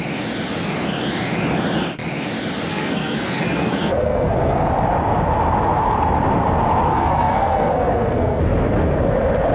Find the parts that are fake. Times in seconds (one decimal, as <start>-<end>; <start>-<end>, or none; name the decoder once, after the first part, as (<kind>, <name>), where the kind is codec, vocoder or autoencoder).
2.7-4.7 (codec, SNAC); 6.9-8.4